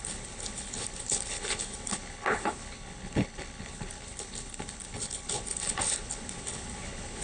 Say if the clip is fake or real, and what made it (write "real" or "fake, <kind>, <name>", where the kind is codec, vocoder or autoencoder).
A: fake, codec, HILCodec